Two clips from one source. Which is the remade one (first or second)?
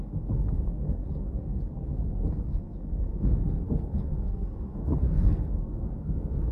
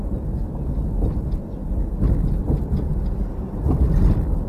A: first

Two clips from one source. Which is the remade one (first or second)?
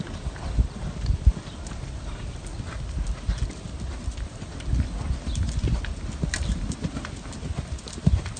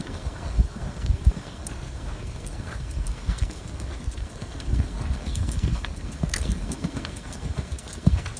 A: second